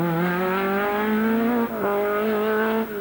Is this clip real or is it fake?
real